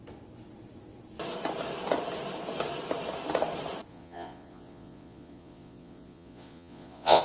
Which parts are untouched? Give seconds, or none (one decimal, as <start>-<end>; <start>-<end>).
0.0-3.9